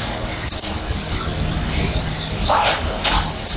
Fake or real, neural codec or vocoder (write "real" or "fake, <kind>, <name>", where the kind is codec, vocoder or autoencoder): fake, codec, DAC